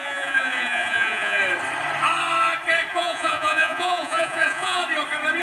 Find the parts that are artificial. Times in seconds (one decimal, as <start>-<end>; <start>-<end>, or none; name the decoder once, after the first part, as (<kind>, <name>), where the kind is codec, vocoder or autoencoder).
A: 0.0-1.4 (vocoder, Vocos); 2.9-4.8

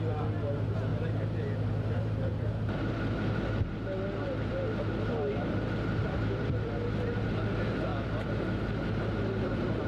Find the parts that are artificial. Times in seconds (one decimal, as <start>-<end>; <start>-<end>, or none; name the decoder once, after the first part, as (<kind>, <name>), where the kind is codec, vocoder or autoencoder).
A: 0.9-1.7 (vocoder, BigVGAN v2); 7.9-9.9

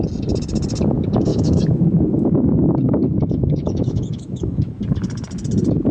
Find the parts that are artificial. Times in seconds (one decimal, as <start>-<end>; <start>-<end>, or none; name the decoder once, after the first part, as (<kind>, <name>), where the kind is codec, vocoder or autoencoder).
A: 1.3-4.8 (autoencoder, DAC-VAE)